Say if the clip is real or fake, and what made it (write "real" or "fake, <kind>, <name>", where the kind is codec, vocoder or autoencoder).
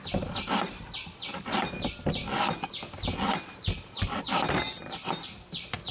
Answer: real